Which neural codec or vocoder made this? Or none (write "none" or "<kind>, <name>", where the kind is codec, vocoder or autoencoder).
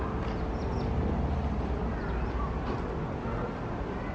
none